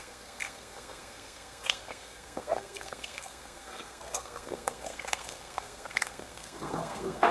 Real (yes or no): no